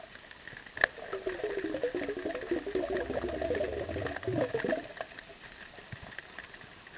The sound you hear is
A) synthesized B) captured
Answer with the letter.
B